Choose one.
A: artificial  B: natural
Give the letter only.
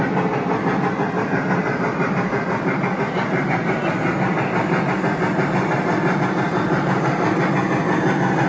B